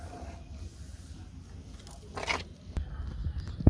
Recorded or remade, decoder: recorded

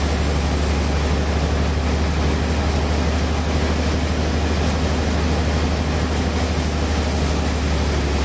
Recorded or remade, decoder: recorded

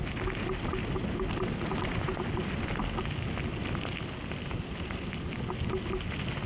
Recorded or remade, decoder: recorded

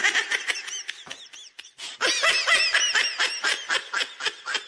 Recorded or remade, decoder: recorded